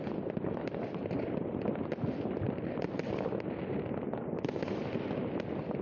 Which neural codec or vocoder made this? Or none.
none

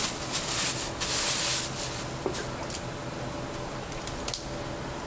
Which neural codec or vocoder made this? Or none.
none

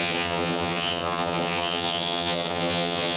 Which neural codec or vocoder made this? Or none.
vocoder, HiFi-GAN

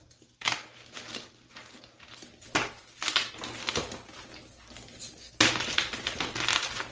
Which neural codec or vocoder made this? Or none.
none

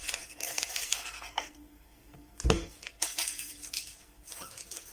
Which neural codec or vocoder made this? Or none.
codec, SNAC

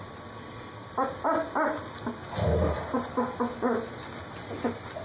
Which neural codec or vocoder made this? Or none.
none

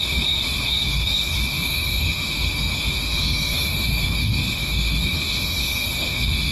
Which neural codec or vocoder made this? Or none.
autoencoder, DAC-VAE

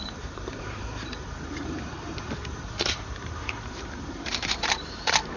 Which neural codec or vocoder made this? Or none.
vocoder, BigVGAN v2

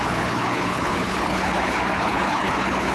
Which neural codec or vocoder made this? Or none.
codec, HILCodec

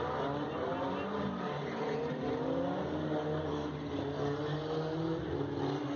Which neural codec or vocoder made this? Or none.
none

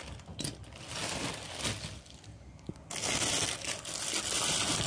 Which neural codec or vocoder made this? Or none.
none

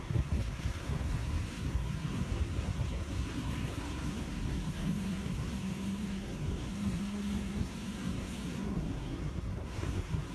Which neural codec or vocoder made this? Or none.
codec, SNAC